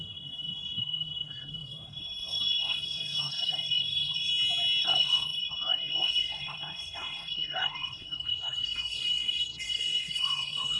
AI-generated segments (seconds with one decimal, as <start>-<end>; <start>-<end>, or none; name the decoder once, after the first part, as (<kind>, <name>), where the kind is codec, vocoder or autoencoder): 0.0-4.3 (codec, SNAC); 4.8-10.8